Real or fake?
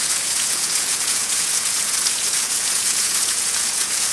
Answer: fake